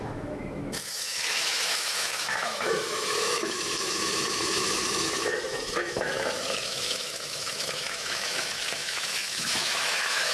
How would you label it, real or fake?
fake